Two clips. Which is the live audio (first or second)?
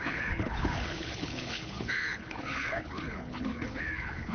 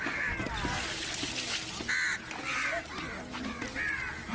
second